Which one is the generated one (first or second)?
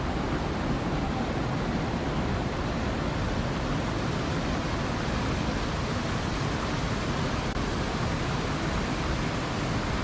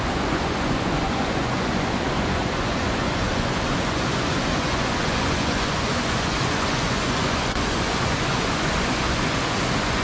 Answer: second